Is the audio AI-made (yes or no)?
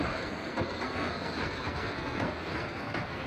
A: yes